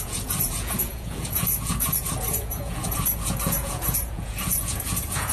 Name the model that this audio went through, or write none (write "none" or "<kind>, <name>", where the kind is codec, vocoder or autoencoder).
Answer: vocoder, Vocos